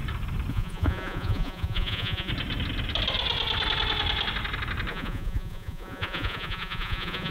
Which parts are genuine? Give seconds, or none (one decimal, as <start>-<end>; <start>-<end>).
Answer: 0.0-0.5; 2.3-4.9

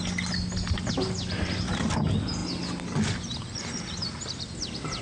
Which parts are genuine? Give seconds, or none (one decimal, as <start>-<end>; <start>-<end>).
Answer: 0.0-5.0

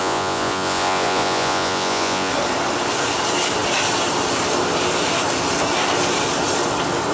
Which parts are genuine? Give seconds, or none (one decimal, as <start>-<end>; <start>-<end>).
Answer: 2.3-7.1

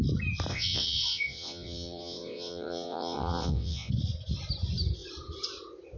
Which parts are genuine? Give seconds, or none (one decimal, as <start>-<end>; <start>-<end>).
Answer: 0.0-0.5; 3.9-6.0